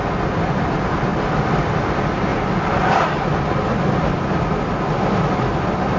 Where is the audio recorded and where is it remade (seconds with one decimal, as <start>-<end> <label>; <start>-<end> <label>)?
0.0-6.0 recorded